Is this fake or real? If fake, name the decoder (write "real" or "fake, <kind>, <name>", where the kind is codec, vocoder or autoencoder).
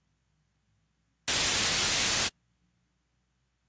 real